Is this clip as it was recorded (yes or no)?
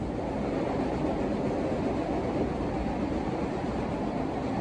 yes